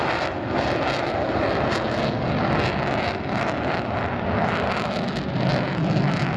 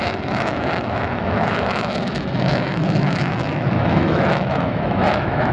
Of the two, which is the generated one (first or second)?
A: second